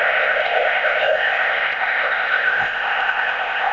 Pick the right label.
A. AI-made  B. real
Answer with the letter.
A